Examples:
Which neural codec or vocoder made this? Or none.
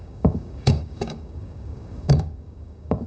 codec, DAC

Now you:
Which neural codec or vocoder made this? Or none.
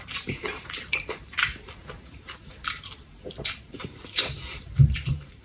vocoder, BigVGAN v2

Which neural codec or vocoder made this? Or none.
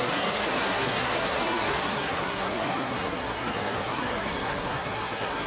codec, SNAC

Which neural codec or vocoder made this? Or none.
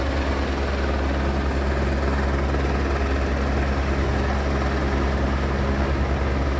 none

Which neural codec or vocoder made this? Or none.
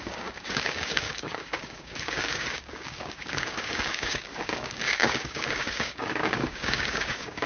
codec, DAC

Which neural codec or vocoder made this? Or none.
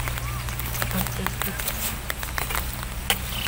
none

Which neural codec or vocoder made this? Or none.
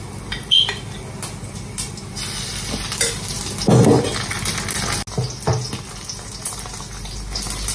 none